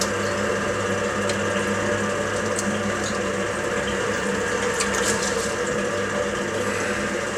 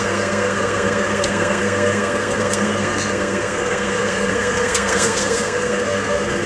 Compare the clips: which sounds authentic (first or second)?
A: first